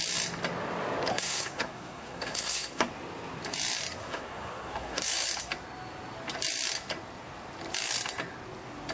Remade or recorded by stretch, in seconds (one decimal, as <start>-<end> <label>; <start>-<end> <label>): 0.0-1.1 recorded; 1.1-2.9 remade; 2.9-4.0 recorded; 4.0-5.0 remade; 5.0-8.9 recorded